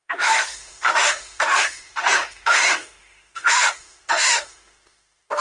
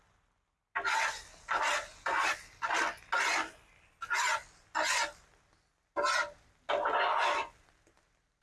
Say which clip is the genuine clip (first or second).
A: second